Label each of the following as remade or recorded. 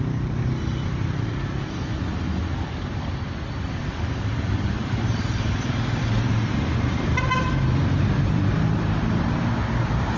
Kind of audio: remade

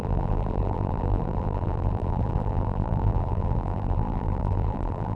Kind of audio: remade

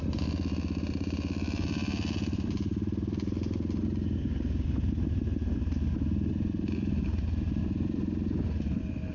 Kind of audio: recorded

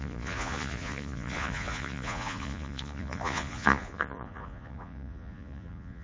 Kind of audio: remade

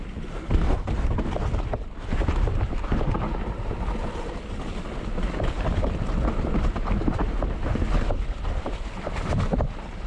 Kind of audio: remade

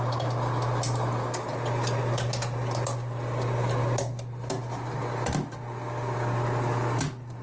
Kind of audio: recorded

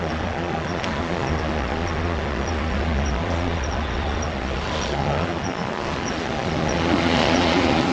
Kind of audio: remade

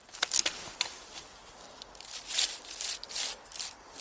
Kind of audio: recorded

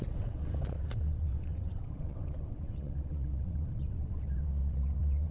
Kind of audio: remade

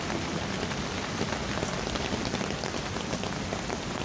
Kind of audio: recorded